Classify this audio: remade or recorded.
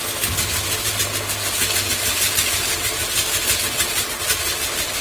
recorded